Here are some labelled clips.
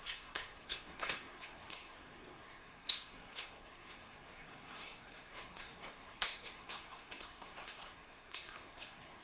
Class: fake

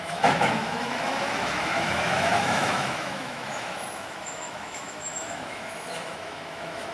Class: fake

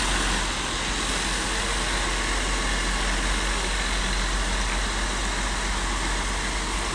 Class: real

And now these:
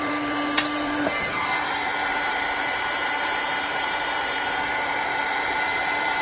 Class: fake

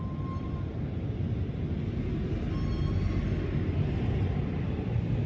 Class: real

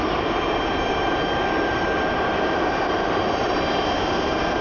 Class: fake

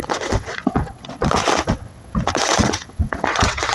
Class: fake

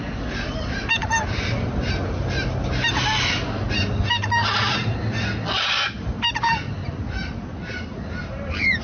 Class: real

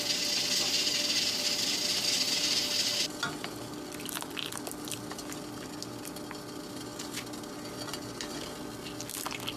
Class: real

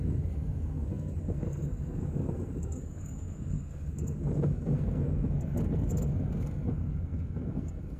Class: fake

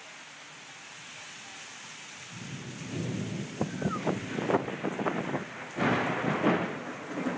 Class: real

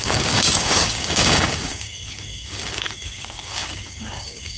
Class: fake